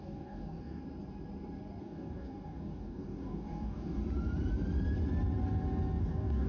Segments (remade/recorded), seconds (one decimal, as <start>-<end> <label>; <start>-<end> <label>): 0.0-0.8 remade; 0.8-1.8 recorded; 1.8-4.0 remade; 4.0-6.0 recorded; 6.0-6.5 remade